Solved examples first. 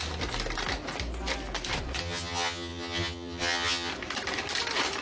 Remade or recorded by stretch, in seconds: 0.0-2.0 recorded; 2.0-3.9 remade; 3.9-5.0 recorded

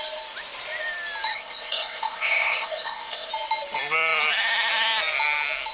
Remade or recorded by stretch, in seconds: 0.0-1.3 recorded; 1.3-3.3 remade; 3.3-5.7 recorded

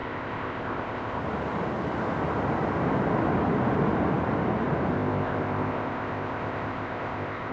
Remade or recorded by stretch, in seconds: 0.0-1.2 remade; 1.2-4.9 recorded; 4.9-7.5 remade

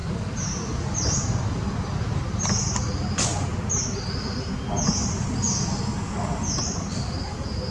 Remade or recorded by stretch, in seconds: 0.0-7.7 recorded

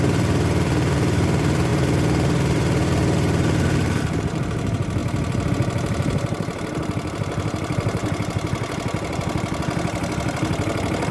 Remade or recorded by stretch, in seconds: 0.0-5.0 remade; 5.0-5.5 recorded; 5.5-8.0 remade; 8.0-11.1 recorded

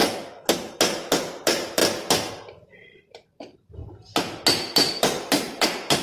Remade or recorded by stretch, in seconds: 0.0-1.2 recorded; 1.2-1.8 remade; 1.8-2.3 recorded; 2.3-3.8 remade; 3.8-4.9 recorded; 4.9-6.0 remade

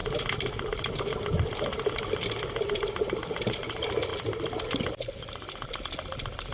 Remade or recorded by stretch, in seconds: 0.0-6.5 recorded